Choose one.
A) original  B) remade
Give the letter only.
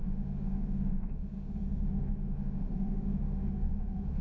B